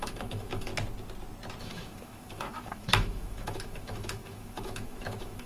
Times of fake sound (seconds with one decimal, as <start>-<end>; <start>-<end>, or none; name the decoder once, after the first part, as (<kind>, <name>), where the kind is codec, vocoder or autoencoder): 0.0-0.7 (autoencoder, DAC-VAE); 1.6-5.5